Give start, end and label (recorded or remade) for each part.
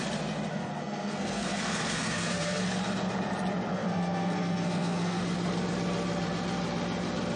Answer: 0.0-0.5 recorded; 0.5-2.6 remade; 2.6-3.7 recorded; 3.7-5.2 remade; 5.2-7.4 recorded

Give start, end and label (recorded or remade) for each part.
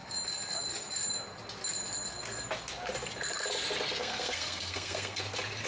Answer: 0.0-4.0 recorded; 4.0-5.2 remade; 5.2-5.7 recorded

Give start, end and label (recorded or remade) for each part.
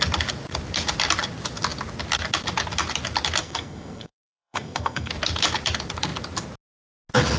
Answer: 0.0-3.4 recorded; 3.4-5.1 remade; 5.1-7.4 recorded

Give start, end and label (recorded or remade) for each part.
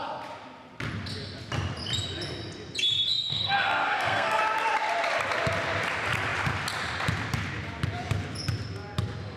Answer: 0.0-3.1 recorded; 3.1-4.4 remade; 4.4-9.4 recorded